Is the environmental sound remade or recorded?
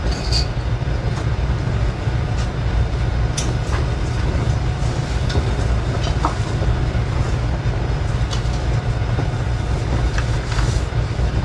recorded